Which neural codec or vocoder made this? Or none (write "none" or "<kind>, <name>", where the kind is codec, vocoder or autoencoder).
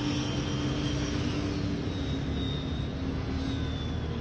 none